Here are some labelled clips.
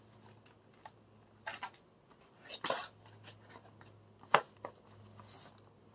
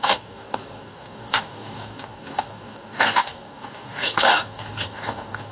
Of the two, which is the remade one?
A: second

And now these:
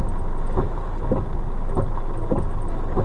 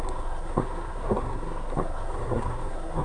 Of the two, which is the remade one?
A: second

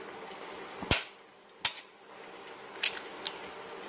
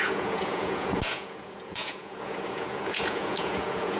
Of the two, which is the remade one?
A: second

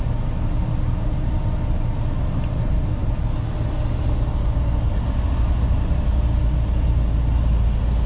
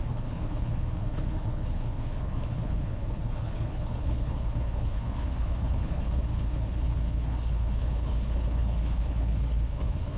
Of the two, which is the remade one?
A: second